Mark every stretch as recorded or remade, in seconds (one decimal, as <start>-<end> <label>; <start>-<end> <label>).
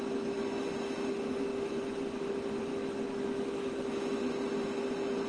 0.0-2.7 recorded; 2.7-3.7 remade; 3.7-5.3 recorded